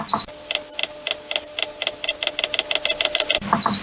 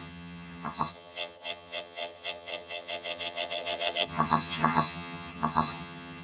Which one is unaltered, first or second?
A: first